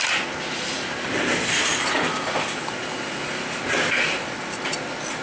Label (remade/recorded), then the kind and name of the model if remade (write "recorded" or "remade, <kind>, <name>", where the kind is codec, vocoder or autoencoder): recorded